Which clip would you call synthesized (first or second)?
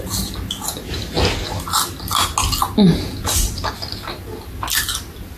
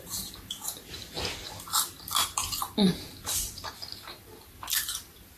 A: second